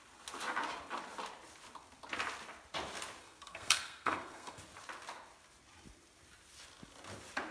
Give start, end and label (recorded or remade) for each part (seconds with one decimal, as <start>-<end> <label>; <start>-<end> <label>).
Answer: 0.0-3.2 recorded; 3.2-4.6 remade; 4.6-7.5 recorded